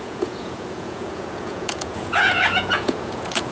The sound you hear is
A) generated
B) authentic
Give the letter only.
A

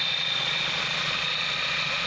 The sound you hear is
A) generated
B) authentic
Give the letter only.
A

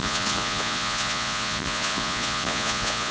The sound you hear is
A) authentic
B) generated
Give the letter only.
B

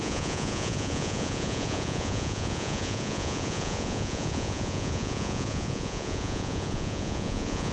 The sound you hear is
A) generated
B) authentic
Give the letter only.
A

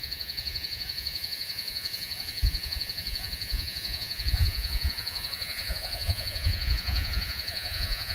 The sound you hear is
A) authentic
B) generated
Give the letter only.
B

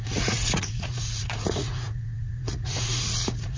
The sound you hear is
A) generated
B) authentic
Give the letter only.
A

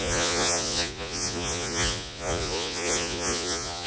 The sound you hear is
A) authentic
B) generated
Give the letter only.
B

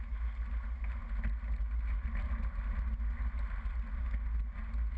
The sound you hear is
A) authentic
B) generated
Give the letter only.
A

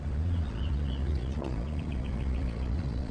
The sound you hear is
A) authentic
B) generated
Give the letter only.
B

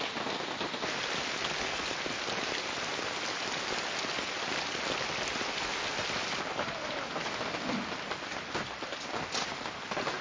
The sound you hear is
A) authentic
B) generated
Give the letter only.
A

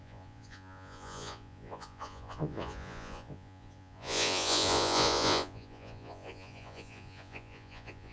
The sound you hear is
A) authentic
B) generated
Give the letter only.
B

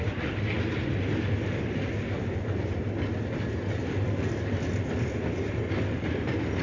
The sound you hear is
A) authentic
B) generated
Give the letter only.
A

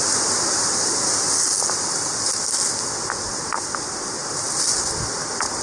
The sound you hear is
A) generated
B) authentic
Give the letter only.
B